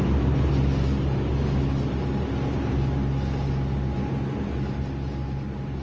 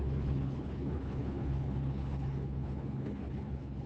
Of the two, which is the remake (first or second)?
second